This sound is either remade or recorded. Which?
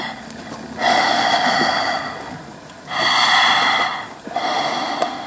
recorded